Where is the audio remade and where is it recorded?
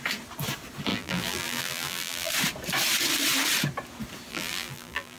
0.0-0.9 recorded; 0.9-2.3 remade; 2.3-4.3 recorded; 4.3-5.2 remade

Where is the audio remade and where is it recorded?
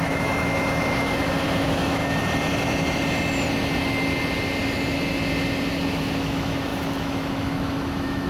0.0-2.0 remade; 2.0-5.7 recorded; 5.7-8.3 remade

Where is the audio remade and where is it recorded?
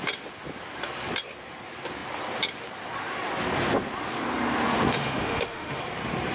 0.0-4.9 recorded; 4.9-5.8 remade; 5.8-6.3 recorded